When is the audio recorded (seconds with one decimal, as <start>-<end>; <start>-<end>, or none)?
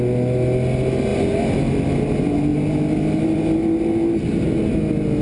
0.0-5.2